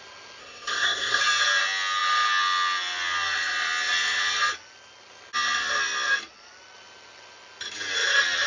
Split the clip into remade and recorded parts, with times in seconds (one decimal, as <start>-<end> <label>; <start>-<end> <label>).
0.0-0.4 recorded; 0.4-1.2 remade; 1.2-8.5 recorded